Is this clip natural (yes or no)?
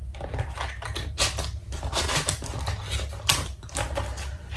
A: yes